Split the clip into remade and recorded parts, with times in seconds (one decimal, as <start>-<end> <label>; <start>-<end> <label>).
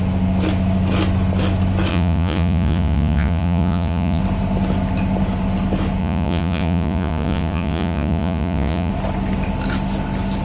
0.0-1.9 recorded; 1.9-4.2 remade; 4.2-6.0 recorded; 6.0-8.9 remade; 8.9-10.4 recorded